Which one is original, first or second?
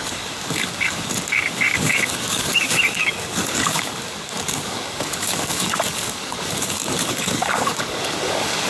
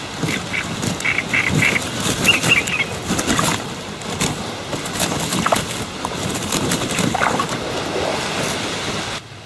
second